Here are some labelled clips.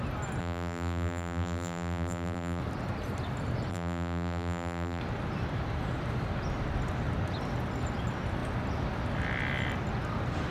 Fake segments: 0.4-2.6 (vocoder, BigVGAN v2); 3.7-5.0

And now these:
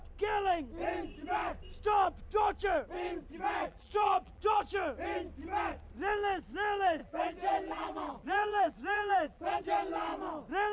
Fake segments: 3.6-4.6 (vocoder, BigVGAN v2); 7.0-9.6

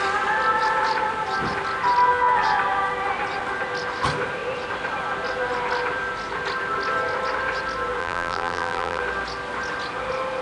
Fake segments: 8.0-9.0 (vocoder, BigVGAN v2)

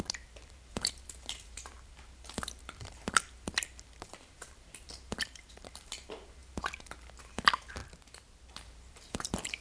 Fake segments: 0.0-7.8 (vocoder, BigVGAN v2); 8.5-9.6

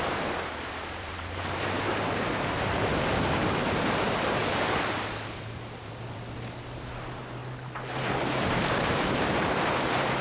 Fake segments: 0.0-4.4 (vocoder, BigVGAN v2); 5.1-7.4; 8.0-10.2